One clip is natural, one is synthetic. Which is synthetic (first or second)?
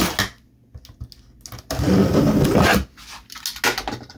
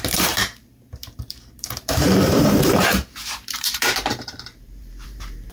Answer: second